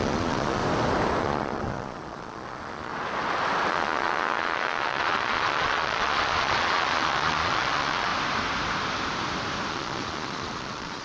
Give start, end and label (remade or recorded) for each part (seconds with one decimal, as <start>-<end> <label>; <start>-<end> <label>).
0.0-0.6 remade; 0.6-1.2 recorded; 1.2-2.9 remade; 2.9-3.7 recorded; 3.7-8.1 remade; 8.1-9.7 recorded; 9.7-11.0 remade